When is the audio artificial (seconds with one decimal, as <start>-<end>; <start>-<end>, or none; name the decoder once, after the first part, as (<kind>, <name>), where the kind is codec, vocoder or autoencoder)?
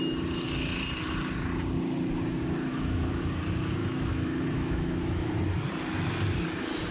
2.7-3.2 (autoencoder, DAC-VAE); 3.8-5.3